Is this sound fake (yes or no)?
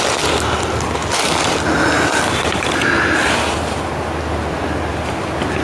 no